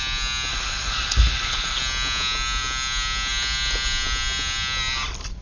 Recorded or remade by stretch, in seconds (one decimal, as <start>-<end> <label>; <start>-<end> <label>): 0.0-0.5 recorded; 0.5-1.8 remade; 1.8-5.4 recorded